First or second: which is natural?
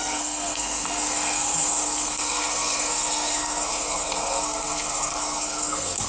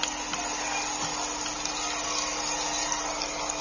second